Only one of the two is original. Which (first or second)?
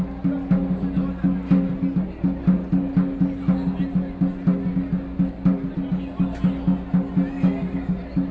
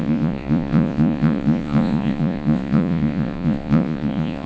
first